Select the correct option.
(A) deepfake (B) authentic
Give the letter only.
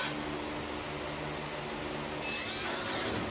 B